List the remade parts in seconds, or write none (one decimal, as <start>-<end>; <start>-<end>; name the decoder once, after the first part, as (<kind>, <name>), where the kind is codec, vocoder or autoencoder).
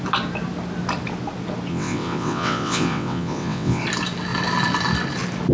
1.7-3.8 (vocoder, WaveNeXt)